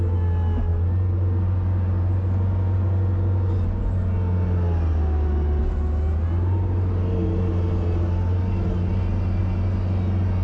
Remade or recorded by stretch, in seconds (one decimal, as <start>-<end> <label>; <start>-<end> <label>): 0.0-10.4 recorded